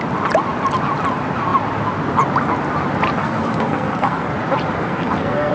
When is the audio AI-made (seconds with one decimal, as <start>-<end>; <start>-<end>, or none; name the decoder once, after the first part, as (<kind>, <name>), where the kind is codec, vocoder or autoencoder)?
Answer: 3.2-4.3 (codec, SNAC); 4.8-5.5